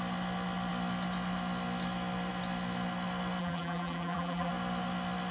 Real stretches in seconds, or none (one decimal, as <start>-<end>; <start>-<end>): 0.0-3.4; 4.5-5.3